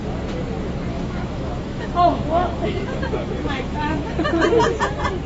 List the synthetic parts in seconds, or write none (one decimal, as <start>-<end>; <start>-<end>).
0.9-4.1